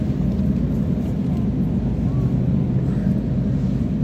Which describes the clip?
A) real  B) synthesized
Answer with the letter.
A